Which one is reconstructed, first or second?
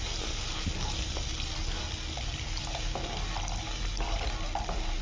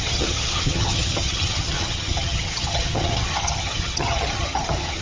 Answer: second